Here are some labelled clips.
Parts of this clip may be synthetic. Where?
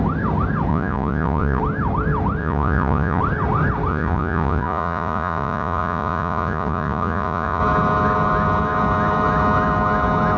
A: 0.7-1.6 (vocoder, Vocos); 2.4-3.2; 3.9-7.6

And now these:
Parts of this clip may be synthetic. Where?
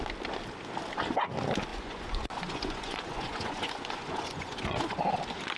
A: 1.7-5.1 (vocoder, Vocos)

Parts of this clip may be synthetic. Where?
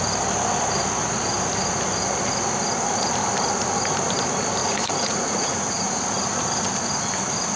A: 4.6-6.0 (vocoder, Vocos)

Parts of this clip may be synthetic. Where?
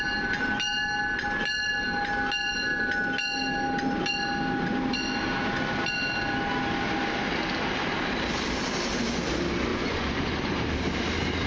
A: 9.7-10.4 (vocoder, Vocos)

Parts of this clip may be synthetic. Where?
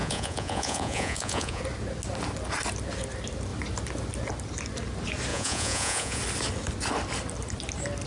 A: 0.0-1.6 (vocoder, Vocos); 5.3-6.2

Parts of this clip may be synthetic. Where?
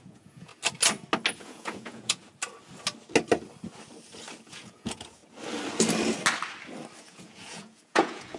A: 0.0-0.5 (vocoder, Vocos); 1.4-2.2; 4.5-5.2; 7.0-8.4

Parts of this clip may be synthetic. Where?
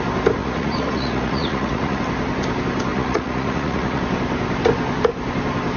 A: 0.4-2.0 (vocoder, Vocos); 2.9-4.0